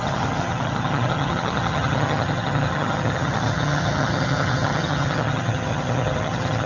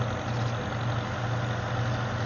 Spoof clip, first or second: first